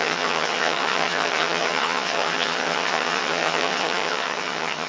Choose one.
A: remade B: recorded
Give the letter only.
A